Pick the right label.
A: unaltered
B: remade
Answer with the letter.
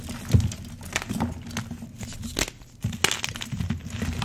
A